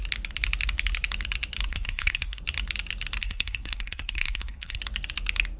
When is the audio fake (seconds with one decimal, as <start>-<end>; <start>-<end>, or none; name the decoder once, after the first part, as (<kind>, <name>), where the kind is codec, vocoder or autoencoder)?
1.7-2.4 (codec, SNAC); 3.2-4.8

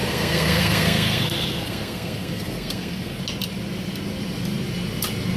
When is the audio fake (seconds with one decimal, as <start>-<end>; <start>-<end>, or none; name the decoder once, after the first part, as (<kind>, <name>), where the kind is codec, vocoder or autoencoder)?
0.0-3.2 (codec, SNAC)

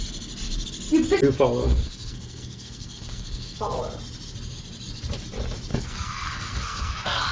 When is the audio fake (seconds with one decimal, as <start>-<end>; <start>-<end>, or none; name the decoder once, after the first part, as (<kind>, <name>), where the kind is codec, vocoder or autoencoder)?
1.6-3.8 (codec, SNAC); 5.7-7.3

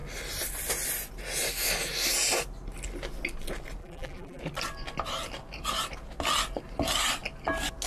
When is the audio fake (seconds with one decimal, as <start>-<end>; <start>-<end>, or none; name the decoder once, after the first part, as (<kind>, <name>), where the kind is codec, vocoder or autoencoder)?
3.8-4.4 (vocoder, BigVGAN v2)

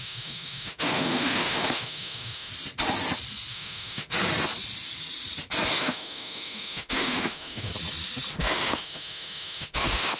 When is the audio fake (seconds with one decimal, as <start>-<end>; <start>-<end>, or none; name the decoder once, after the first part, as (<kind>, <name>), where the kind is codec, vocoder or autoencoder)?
0.0-2.5 (autoencoder, DAC-VAE); 3.5-4.1; 5.7-7.7; 8.3-10.2

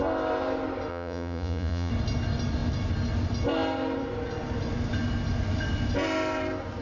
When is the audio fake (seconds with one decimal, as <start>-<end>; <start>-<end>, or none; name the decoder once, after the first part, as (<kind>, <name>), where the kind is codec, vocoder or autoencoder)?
0.9-1.9 (vocoder, Vocos)